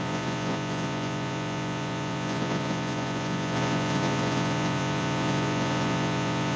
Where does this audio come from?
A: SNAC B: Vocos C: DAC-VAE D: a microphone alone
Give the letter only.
B